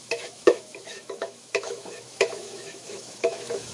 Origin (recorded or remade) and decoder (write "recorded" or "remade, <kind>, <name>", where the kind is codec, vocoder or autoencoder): remade, autoencoder, DAC-VAE